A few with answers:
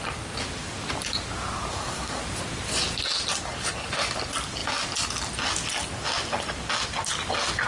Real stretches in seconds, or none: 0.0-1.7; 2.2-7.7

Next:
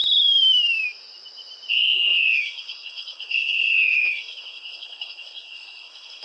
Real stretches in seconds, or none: 0.0-1.7

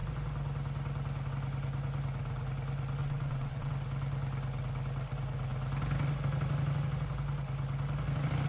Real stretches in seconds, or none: 0.0-3.0; 3.7-8.5

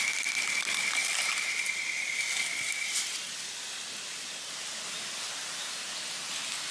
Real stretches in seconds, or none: 0.0-6.7

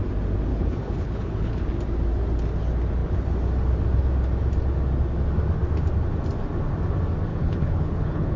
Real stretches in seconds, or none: 0.0-0.5; 1.6-7.3

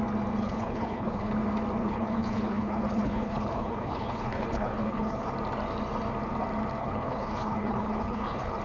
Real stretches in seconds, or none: 0.0-0.4; 1.3-1.8; 5.3-6.8